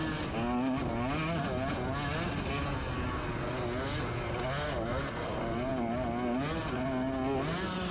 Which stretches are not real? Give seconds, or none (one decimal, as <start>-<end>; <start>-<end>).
none